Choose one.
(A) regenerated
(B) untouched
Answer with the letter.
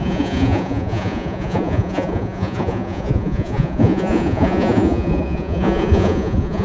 A